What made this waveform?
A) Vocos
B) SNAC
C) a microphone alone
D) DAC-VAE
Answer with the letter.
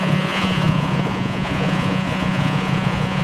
A